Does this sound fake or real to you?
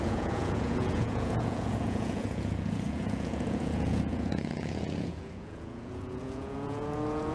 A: fake